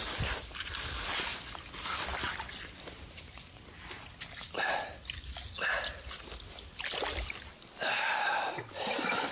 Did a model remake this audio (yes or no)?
no